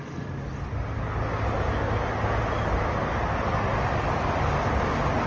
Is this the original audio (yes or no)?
yes